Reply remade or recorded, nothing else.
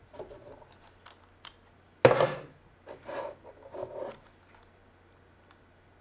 recorded